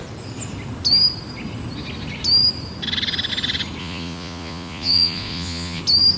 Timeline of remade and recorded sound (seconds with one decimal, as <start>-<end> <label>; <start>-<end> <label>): 0.0-3.8 recorded; 3.8-5.8 remade; 5.8-6.2 recorded